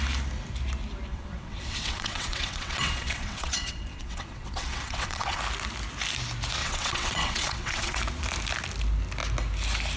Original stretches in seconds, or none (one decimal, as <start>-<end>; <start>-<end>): 0.0-1.1; 5.4-6.6; 8.0-10.0